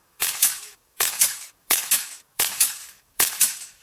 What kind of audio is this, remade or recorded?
remade